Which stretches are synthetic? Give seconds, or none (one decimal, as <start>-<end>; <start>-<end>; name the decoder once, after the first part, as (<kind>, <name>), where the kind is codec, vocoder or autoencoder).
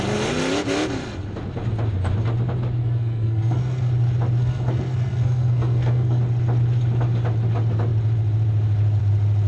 2.8-3.9 (codec, SNAC); 4.4-6.2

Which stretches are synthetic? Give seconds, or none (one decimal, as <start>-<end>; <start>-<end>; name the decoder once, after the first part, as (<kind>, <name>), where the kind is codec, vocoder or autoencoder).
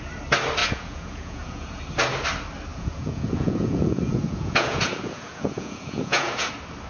0.6-1.8 (vocoder, Vocos); 2.7-6.5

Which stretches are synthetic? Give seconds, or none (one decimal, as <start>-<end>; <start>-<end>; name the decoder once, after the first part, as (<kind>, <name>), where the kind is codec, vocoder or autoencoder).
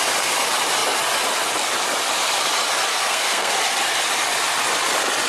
2.9-3.5 (codec, SNAC)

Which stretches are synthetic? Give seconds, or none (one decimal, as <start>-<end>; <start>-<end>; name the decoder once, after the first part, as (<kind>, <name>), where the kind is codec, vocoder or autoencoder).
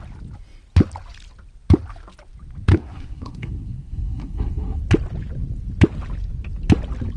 2.7-4.8 (codec, SNAC)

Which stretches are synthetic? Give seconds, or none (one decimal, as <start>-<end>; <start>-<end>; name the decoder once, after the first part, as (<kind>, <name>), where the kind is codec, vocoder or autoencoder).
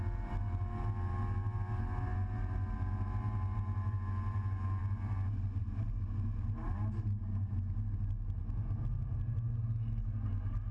none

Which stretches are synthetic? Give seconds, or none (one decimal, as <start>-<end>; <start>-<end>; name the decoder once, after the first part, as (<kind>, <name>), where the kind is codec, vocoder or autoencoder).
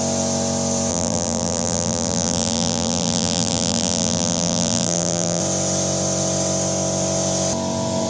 0.9-5.4 (vocoder, BigVGAN v2)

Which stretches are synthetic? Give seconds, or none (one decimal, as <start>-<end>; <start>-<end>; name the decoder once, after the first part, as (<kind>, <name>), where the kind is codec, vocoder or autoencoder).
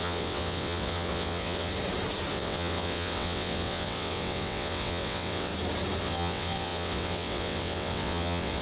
0.0-1.7 (vocoder, WaveNeXt); 2.3-5.5; 6.0-8.6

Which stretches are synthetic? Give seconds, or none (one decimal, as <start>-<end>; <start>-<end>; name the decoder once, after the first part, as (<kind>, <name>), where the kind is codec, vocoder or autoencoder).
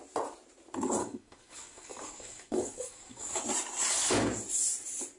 1.0-3.4 (codec, DAC)